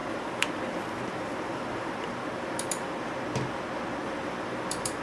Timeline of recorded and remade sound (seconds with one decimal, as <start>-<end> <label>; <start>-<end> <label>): 0.0-3.0 remade; 3.0-4.0 recorded; 4.0-5.0 remade